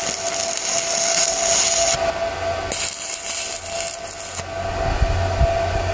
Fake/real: real